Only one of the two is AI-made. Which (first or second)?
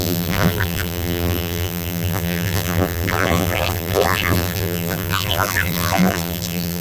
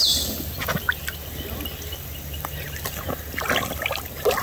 first